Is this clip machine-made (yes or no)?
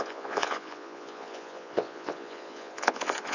yes